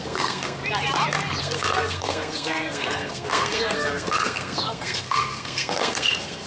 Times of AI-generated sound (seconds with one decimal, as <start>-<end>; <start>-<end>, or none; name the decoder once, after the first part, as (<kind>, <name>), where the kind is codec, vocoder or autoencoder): 0.0-0.6 (codec, SNAC); 1.4-6.5